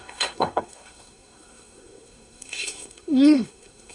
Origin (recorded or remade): remade